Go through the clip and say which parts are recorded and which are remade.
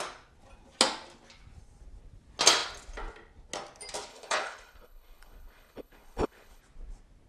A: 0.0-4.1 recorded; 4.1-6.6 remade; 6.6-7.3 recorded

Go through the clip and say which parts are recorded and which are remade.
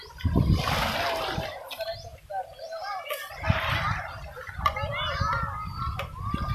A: 0.0-6.5 recorded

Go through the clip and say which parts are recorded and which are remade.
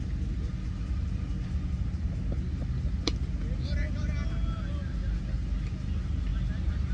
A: 0.0-6.9 recorded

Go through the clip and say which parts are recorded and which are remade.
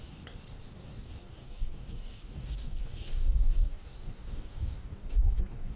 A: 0.0-0.9 recorded; 0.9-5.8 remade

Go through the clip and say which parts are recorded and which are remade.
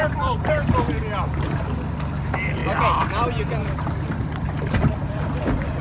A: 0.0-5.8 recorded